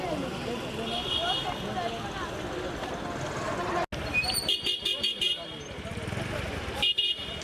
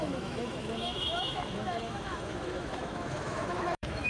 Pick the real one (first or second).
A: first